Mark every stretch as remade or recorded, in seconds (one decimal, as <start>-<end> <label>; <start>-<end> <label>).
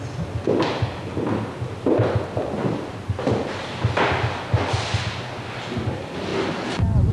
0.0-7.1 recorded